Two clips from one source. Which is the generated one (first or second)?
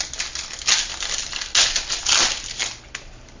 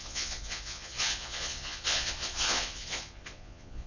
second